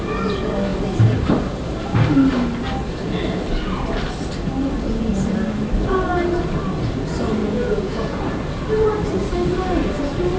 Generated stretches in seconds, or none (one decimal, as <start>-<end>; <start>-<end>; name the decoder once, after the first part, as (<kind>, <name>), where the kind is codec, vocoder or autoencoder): 7.4-8.2 (vocoder, Vocos)